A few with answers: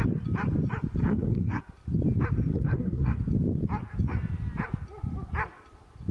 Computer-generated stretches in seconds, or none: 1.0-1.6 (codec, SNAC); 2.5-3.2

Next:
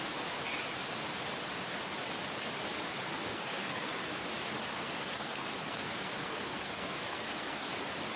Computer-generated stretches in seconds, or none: 3.3-3.9 (codec, SNAC); 4.7-7.7